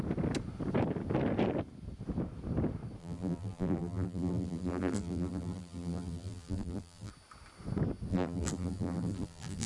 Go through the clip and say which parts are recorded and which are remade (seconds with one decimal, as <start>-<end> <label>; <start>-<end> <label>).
0.0-3.0 recorded; 3.0-7.1 remade; 7.1-8.1 recorded; 8.1-9.7 remade